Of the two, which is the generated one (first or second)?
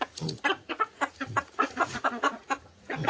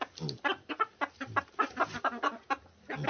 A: first